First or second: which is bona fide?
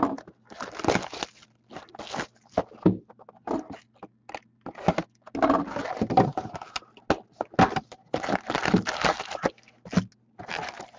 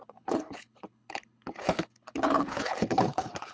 first